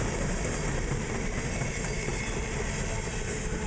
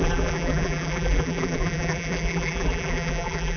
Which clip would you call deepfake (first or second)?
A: second